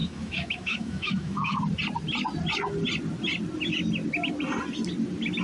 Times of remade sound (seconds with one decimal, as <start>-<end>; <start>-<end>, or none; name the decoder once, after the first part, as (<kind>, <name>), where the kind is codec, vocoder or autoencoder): 0.0-1.6 (autoencoder, DAC-VAE)